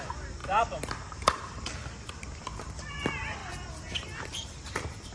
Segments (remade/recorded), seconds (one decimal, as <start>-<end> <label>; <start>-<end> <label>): 0.0-3.4 remade; 3.4-4.2 recorded; 4.2-5.1 remade